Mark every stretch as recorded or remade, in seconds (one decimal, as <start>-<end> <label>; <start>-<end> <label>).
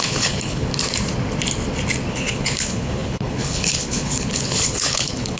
0.0-0.7 remade; 0.7-2.1 recorded; 2.1-5.4 remade